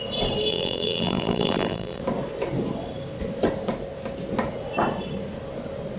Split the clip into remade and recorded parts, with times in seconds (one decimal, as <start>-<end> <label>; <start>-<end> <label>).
0.0-0.5 recorded; 0.5-2.0 remade; 2.0-6.0 recorded